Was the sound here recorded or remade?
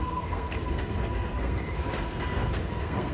remade